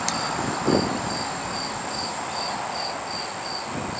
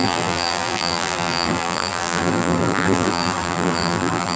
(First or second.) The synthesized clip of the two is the second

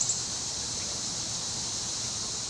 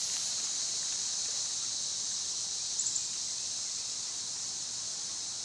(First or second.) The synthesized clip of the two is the first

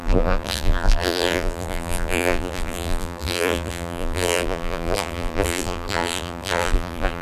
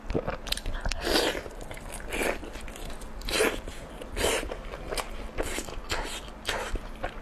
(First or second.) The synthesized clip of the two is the first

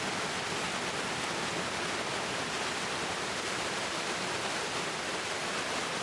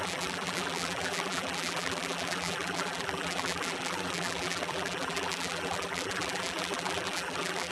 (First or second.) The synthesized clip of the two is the second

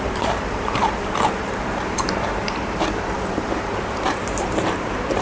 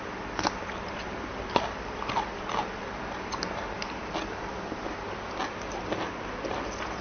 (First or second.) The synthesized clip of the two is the first